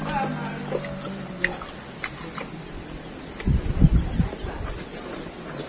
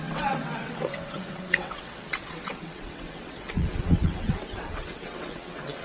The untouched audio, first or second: first